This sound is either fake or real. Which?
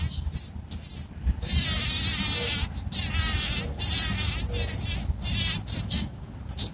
real